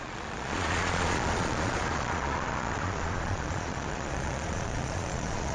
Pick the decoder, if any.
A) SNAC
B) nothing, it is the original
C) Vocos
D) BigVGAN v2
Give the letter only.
C